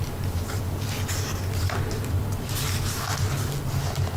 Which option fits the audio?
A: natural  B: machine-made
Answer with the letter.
A